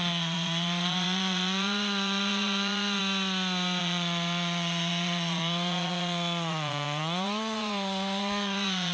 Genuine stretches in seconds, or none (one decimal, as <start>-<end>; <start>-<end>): 3.0-3.8

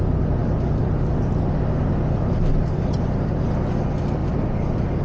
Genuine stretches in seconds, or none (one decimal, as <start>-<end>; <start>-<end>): 0.0-4.2